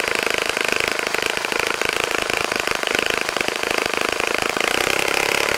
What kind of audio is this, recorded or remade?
remade